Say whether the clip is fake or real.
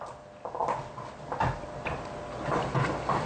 real